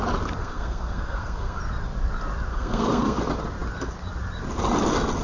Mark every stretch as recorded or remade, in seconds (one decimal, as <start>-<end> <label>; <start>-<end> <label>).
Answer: 0.0-0.4 recorded; 0.4-1.6 remade; 1.6-2.5 recorded; 2.5-3.2 remade; 3.2-5.2 recorded

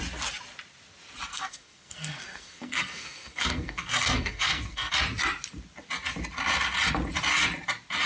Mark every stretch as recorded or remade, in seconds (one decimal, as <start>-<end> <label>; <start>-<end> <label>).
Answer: 0.0-1.3 recorded; 1.3-4.9 remade; 4.9-8.1 recorded

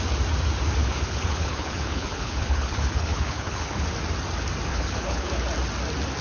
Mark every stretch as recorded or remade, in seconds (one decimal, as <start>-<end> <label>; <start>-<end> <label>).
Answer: 0.0-0.8 recorded; 0.8-3.8 remade; 3.8-4.7 recorded; 4.7-5.3 remade; 5.3-6.2 recorded

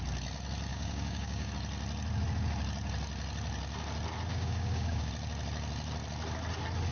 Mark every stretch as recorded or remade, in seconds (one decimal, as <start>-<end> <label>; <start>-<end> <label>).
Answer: 0.0-0.7 recorded; 0.7-1.5 remade; 1.5-4.3 recorded; 4.3-5.1 remade; 5.1-6.9 recorded

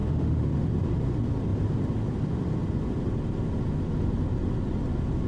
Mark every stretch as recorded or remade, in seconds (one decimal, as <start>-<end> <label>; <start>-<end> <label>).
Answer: 0.0-0.5 remade; 0.5-5.3 recorded

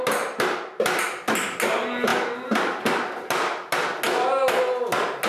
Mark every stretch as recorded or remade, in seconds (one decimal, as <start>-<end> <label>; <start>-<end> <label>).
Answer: 0.0-5.3 recorded

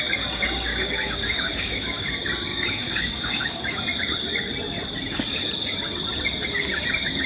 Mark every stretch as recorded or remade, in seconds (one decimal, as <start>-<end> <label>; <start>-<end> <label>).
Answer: 0.0-0.7 recorded; 0.7-2.1 remade; 2.1-2.5 recorded; 2.5-3.8 remade; 3.8-7.3 recorded